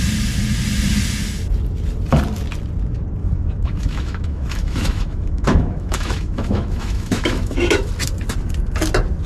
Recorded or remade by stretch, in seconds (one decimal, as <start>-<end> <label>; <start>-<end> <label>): 0.0-3.2 recorded; 3.2-7.9 remade; 7.9-9.3 recorded